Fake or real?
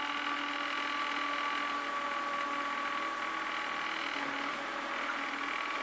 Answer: real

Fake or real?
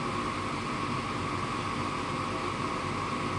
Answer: real